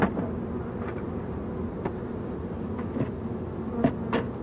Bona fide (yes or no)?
yes